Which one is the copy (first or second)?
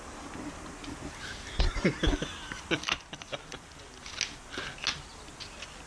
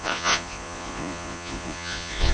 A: second